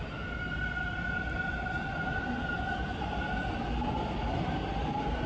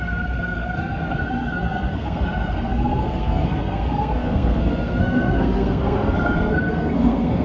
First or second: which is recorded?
first